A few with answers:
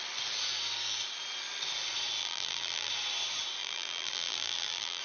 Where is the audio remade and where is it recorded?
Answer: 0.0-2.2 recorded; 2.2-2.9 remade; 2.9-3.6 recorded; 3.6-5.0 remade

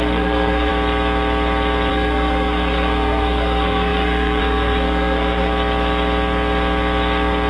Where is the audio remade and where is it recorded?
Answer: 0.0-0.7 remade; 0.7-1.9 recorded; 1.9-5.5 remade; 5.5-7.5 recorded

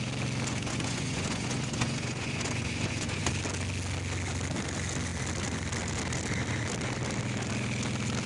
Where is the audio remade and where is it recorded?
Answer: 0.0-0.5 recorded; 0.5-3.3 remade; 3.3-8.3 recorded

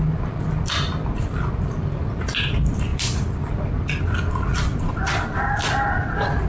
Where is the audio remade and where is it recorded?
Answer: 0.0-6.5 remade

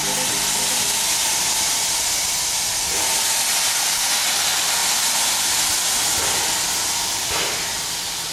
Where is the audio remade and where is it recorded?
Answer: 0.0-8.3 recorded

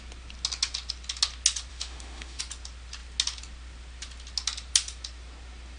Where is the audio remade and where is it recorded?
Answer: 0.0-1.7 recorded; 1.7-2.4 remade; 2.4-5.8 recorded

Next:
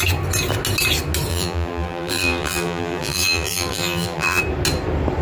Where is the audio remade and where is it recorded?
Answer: 0.0-1.3 recorded; 1.3-4.4 remade; 4.4-5.2 recorded

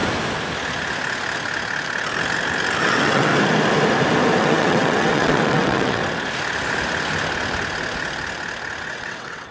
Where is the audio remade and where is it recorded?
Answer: 0.0-2.8 recorded; 2.8-3.3 remade; 3.3-4.4 recorded; 4.4-6.0 remade; 6.0-8.8 recorded; 8.8-9.5 remade